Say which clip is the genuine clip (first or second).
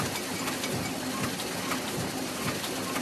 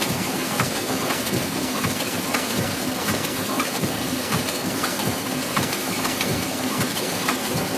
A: first